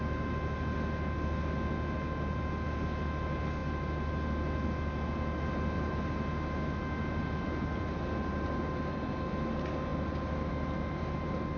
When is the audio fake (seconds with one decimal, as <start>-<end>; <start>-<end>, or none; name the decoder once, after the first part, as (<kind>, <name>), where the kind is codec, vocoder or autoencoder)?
none